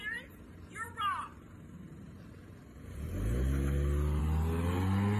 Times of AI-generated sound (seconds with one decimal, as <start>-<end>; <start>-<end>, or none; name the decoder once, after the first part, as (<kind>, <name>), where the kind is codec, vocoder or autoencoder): none